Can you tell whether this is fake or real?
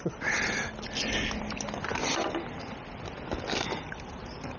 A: real